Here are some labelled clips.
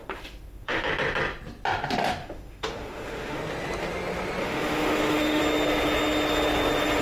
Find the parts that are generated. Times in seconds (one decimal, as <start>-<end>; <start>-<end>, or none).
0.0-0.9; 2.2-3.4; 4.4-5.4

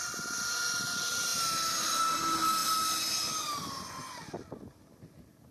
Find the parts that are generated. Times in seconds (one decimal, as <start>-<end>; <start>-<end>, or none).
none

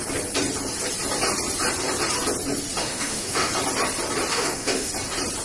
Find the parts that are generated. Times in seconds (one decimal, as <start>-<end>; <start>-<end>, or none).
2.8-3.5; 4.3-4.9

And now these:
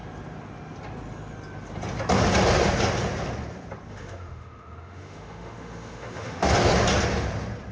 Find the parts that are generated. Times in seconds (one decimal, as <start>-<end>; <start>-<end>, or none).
3.9-6.5

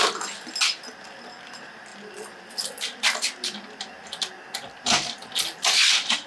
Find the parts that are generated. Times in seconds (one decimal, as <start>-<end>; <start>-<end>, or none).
none